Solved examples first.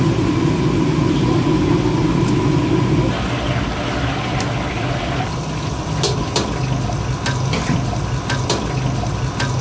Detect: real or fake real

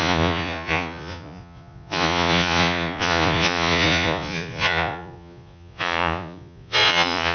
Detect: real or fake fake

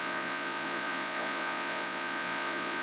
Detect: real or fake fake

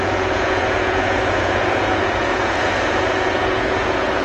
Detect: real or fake fake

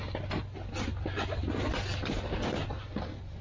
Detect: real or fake real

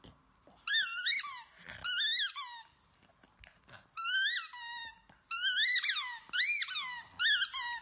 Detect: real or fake real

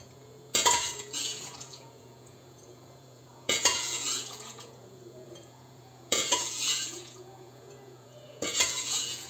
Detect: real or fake fake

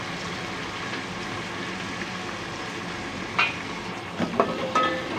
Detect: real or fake real